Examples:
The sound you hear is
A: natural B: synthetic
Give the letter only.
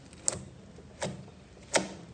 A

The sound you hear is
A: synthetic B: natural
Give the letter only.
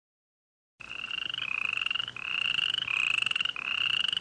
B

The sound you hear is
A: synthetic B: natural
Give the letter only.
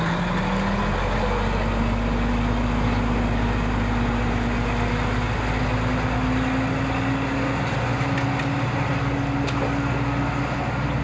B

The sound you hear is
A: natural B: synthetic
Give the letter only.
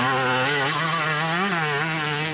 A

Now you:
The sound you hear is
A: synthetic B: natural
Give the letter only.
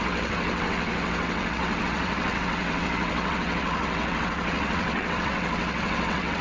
A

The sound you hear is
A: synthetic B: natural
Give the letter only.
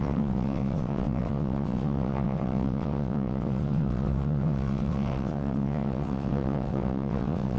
A